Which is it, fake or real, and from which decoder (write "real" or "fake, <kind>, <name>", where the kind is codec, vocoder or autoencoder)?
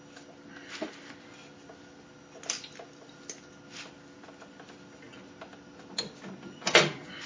real